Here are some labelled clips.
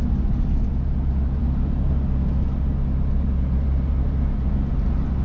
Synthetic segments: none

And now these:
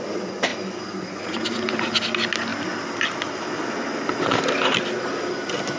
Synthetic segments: none

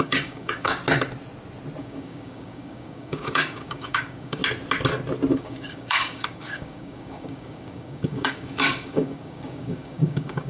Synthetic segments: 0.0-0.8 (codec, DAC); 1.8-4.4; 5.3-10.5